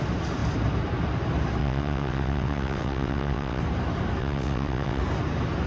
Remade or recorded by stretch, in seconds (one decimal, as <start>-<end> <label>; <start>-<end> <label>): 0.0-1.6 recorded; 1.6-3.6 remade; 3.6-4.2 recorded; 4.2-5.0 remade; 5.0-5.7 recorded